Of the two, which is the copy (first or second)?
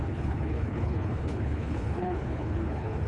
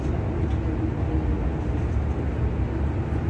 first